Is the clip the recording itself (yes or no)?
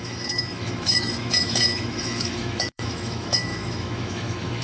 no